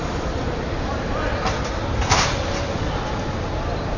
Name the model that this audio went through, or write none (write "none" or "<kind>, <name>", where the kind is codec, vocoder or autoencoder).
none